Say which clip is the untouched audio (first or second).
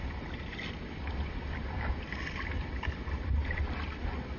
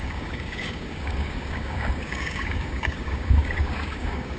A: first